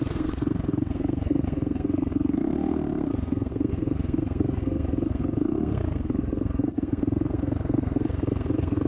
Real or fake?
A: fake